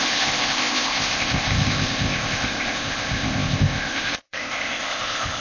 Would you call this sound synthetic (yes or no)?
yes